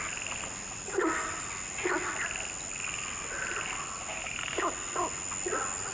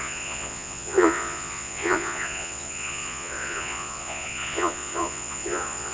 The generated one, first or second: second